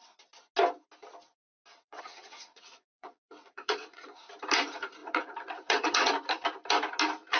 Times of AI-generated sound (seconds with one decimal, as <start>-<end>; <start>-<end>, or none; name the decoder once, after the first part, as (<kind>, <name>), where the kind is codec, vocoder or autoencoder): 1.7-4.2 (vocoder, WaveNeXt); 5.0-6.1